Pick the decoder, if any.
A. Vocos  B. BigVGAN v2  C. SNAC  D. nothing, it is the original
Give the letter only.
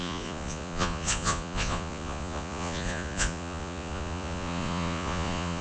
A